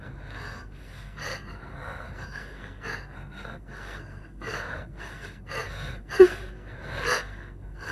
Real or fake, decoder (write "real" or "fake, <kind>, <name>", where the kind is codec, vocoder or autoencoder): fake, codec, SNAC